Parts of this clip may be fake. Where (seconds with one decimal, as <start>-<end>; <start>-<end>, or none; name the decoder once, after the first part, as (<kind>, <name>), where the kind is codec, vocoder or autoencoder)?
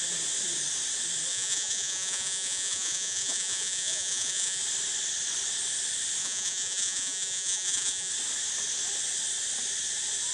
1.3-4.6 (vocoder, Vocos); 6.2-8.1